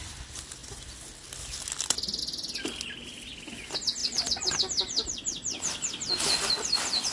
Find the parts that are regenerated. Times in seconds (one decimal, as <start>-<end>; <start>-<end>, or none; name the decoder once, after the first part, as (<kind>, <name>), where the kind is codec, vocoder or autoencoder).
4.0-4.5 (vocoder, Vocos)